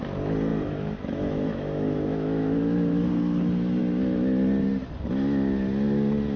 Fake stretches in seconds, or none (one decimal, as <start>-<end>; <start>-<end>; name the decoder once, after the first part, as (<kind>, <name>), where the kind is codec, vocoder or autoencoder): 0.5-3.1 (autoencoder, DAC-VAE)